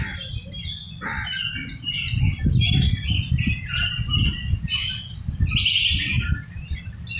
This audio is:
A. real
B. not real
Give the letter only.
A